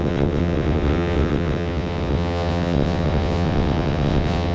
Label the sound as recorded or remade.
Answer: remade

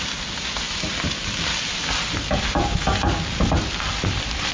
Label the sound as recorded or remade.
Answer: remade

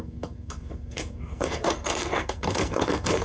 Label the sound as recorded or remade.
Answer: remade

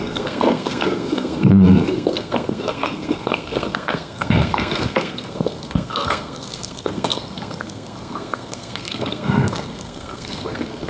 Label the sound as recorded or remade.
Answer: remade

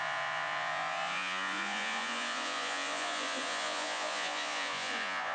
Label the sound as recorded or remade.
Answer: remade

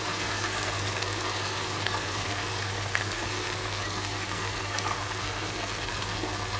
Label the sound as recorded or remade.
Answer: remade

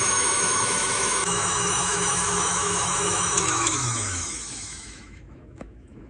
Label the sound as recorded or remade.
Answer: remade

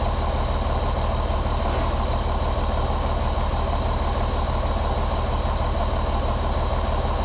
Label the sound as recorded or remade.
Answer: remade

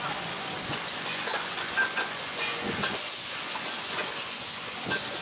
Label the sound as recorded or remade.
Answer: remade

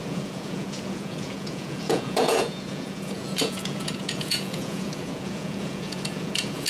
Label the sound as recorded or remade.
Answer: remade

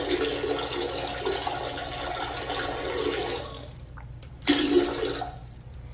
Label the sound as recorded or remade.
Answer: recorded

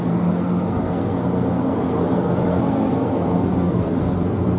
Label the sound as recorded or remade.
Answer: remade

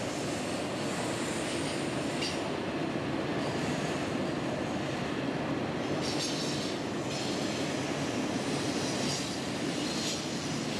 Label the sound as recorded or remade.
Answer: recorded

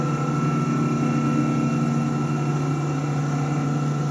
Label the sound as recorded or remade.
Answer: recorded